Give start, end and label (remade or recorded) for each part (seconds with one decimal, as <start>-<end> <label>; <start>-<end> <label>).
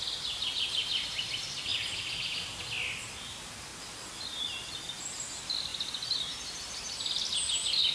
0.0-7.9 recorded